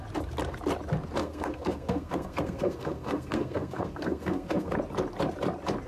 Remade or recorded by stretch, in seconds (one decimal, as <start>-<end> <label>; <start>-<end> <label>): 0.0-1.2 recorded; 1.2-4.7 remade; 4.7-5.9 recorded